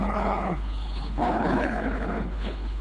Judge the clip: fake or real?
fake